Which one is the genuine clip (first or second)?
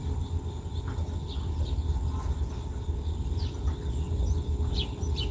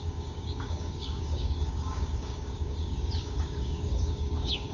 first